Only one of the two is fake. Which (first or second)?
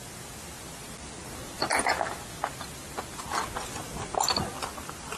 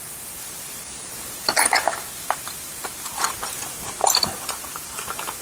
second